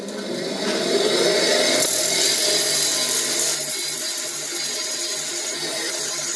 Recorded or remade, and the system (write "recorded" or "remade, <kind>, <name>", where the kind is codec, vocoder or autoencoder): recorded